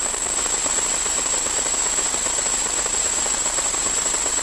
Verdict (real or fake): fake